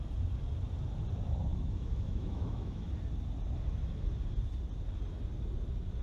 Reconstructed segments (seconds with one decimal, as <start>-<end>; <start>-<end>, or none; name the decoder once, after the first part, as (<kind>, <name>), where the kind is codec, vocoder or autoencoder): 1.5-2.9 (autoencoder, DAC-VAE)